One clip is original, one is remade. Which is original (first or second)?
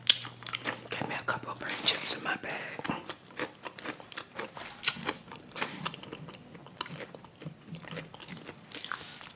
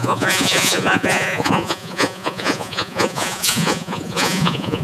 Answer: first